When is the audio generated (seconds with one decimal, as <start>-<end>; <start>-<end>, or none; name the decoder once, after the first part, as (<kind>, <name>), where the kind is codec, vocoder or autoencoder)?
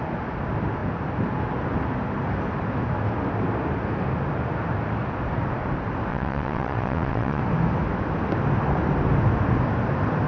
6.1-7.4 (vocoder, WaveNeXt)